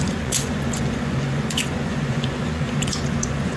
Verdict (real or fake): fake